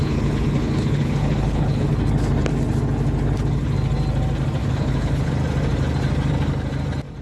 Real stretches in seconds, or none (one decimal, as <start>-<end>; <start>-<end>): 1.9-4.6; 5.3-7.2